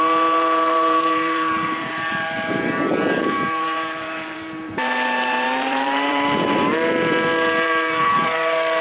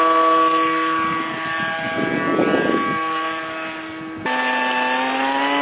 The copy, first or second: first